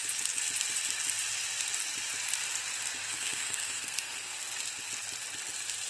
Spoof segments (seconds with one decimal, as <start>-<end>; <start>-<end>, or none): 3.1-4.4